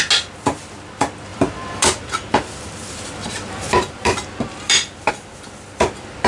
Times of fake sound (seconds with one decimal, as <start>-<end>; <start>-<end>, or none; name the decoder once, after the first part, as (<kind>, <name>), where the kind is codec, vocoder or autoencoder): 1.3-5.1 (vocoder, BigVGAN v2)